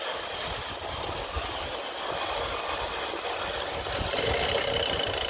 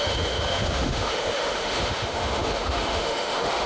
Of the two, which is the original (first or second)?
first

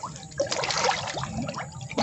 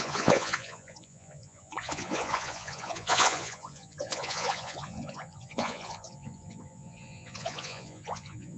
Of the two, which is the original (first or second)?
first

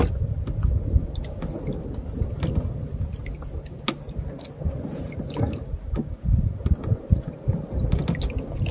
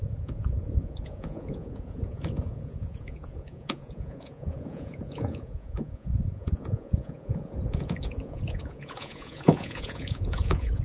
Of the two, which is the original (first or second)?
first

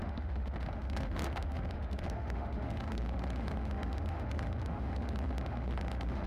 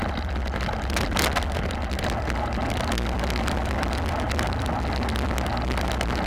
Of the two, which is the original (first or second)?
second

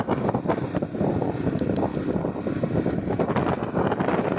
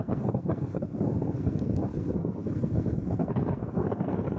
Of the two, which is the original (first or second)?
first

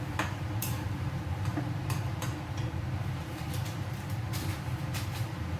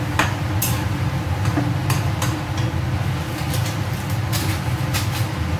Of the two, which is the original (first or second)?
second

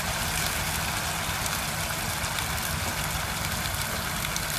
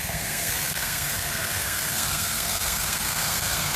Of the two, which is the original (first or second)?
first